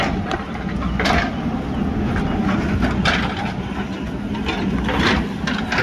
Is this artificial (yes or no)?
no